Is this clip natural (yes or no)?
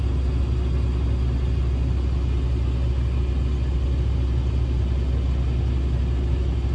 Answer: yes